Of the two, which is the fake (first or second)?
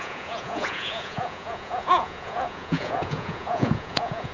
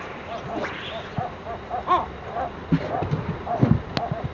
first